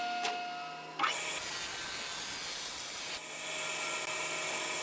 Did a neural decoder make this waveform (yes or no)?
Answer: no